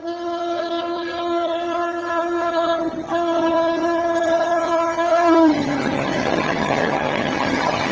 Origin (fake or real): fake